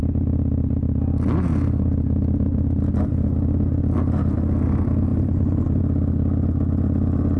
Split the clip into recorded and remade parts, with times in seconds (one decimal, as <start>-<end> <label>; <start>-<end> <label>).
0.0-5.1 recorded; 5.1-5.8 remade; 5.8-7.4 recorded